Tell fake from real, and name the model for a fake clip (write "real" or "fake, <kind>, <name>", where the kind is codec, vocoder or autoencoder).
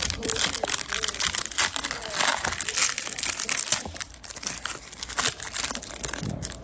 real